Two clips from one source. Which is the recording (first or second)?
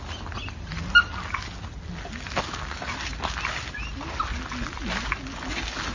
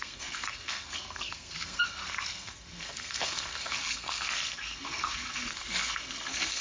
first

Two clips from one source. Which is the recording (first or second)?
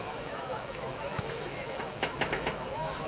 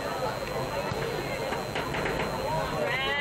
second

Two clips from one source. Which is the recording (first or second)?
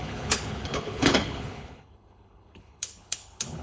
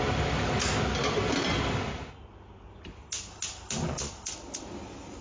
second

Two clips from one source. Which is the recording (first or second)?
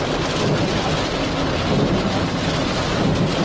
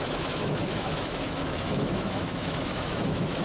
first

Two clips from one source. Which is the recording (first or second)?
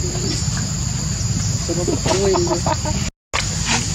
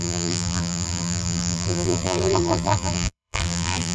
first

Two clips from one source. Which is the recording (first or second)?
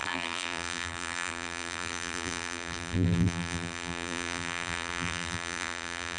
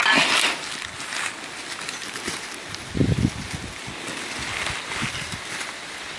second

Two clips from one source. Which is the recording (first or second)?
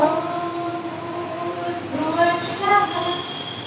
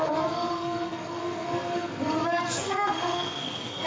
first